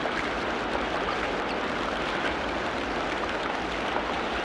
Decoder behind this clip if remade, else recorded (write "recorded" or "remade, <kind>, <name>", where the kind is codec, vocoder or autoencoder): recorded